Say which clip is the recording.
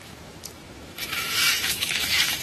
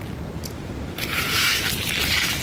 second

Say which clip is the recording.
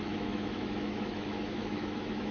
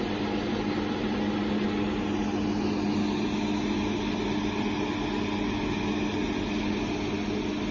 second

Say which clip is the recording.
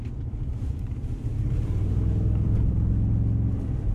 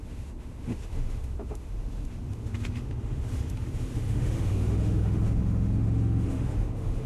first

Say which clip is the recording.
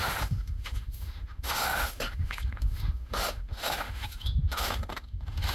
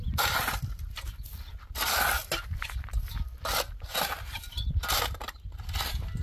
second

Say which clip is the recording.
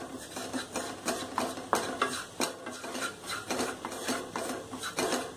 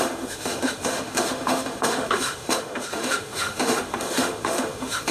first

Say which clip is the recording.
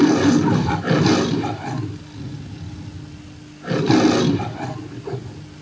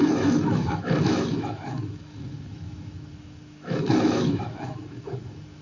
first